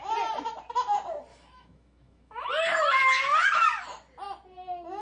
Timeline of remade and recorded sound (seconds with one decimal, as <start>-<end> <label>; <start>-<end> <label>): 0.0-1.3 recorded; 1.3-2.5 remade; 2.5-5.0 recorded